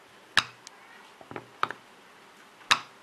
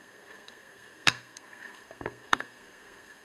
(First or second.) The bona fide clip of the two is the first